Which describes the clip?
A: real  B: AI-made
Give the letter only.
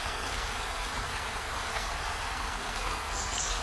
B